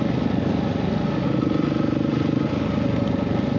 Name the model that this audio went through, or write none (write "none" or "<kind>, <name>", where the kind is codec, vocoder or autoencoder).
none